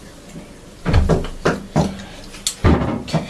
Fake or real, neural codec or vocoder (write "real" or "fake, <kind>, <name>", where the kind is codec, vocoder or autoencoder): real